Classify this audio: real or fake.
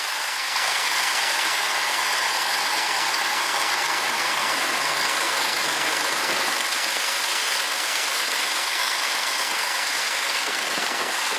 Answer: fake